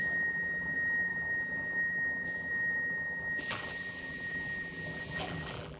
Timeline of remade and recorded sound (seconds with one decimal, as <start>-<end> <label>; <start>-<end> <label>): 0.0-5.8 remade